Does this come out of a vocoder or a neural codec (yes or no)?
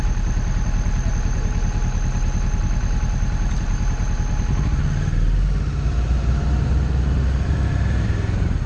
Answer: no